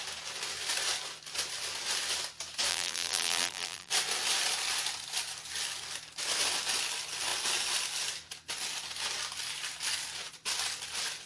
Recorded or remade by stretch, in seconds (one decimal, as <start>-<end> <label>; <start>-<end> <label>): 0.0-2.7 recorded; 2.7-3.9 remade; 3.9-11.3 recorded